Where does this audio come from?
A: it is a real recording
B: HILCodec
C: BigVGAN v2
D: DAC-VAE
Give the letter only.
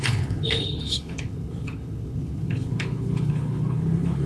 B